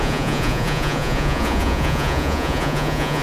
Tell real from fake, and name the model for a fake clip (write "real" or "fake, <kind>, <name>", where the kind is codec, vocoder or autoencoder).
fake, vocoder, Vocos